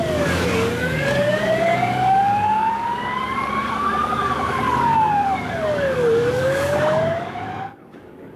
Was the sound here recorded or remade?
remade